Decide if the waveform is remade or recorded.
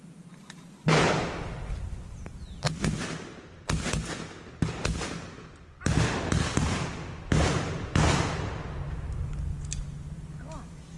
recorded